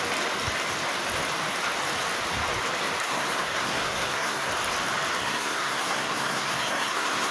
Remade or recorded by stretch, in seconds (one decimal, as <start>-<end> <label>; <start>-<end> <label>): 0.0-3.0 recorded; 3.0-4.5 remade; 4.5-5.2 recorded; 5.2-7.3 remade